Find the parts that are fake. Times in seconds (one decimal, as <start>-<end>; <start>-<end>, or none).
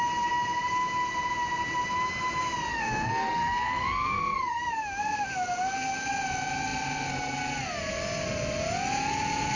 2.7-4.6